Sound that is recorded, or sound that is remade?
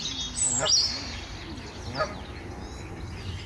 recorded